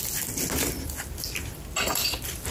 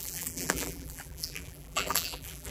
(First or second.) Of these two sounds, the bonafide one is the first